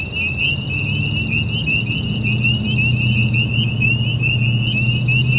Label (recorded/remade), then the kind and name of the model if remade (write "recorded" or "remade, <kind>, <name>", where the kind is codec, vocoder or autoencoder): recorded